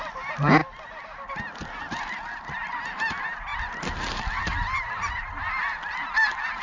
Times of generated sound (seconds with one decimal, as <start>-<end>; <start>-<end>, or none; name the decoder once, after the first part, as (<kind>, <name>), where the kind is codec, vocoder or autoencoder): none